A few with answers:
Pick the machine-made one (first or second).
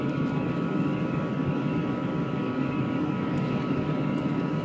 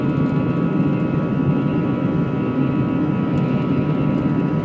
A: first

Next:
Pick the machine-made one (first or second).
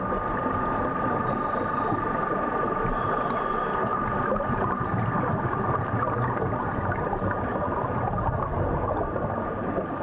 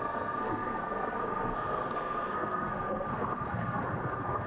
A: second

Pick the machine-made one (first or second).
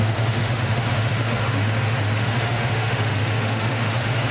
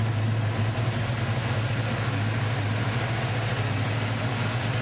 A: first